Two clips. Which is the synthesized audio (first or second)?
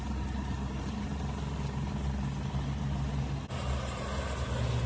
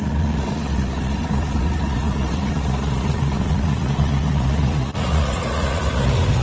second